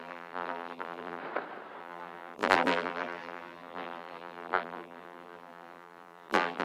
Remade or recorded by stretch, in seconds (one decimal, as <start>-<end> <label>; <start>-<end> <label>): 0.0-1.2 remade; 1.2-1.8 recorded; 1.8-6.6 remade